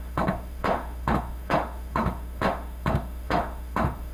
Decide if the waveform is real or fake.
fake